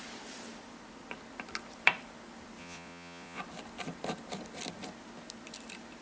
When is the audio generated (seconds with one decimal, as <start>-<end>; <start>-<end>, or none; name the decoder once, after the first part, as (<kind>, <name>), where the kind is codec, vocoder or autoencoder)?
2.6-3.4 (vocoder, Vocos)